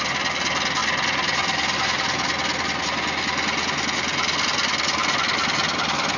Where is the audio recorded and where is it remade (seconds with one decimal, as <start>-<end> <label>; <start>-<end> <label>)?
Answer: 0.0-6.2 recorded